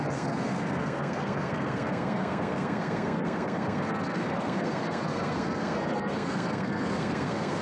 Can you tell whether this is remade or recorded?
remade